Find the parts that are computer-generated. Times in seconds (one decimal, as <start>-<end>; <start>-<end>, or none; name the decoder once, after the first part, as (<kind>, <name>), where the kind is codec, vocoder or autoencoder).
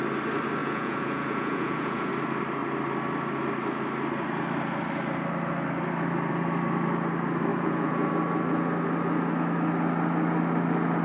0.6-2.1 (vocoder, Vocos); 7.5-8.1